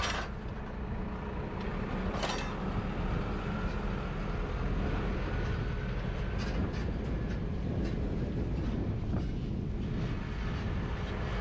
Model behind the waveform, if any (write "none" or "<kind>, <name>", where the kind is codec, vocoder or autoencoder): none